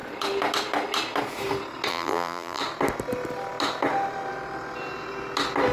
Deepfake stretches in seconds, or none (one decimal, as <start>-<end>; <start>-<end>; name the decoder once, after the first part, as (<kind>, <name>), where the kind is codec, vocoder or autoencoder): 1.9-2.6 (vocoder, BigVGAN v2)